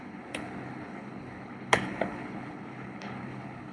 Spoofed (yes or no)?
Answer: yes